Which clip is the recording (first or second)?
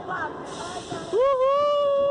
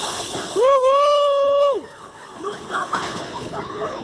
first